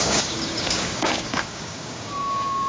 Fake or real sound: fake